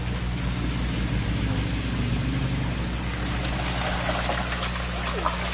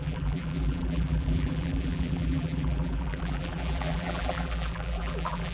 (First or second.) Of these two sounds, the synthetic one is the second